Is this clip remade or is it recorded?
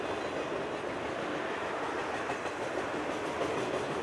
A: recorded